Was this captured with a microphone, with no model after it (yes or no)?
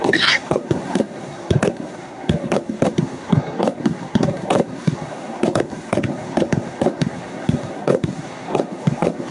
no